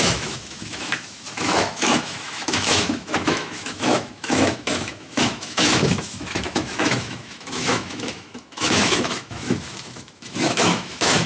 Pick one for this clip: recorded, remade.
remade